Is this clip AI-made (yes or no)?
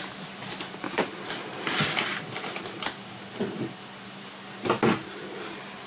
no